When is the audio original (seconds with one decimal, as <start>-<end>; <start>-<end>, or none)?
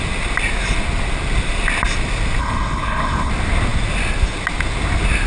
0.0-2.4; 3.3-5.3